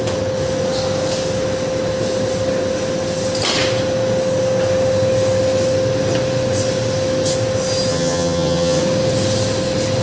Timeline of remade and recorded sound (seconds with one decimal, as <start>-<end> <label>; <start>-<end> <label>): 0.0-7.9 recorded; 7.9-8.8 remade; 8.8-10.0 recorded